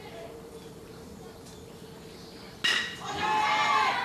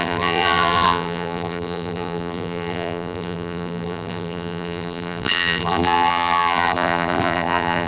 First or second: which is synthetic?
second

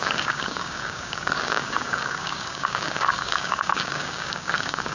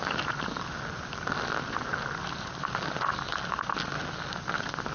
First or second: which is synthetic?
first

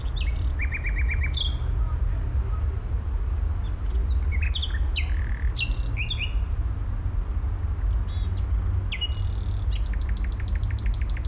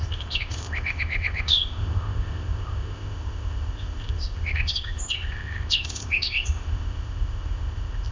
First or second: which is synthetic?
second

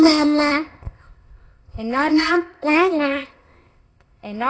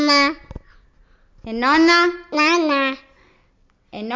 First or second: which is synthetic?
first